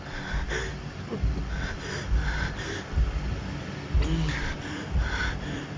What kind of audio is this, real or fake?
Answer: real